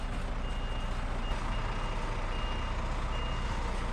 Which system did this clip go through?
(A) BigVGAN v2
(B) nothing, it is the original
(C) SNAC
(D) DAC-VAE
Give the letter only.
B